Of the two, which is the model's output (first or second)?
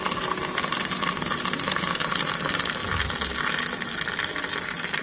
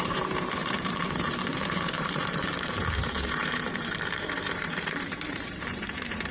second